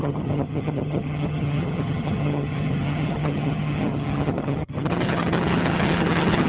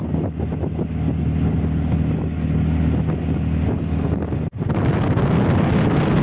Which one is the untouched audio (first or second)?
second